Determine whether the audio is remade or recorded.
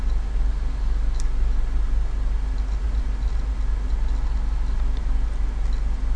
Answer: recorded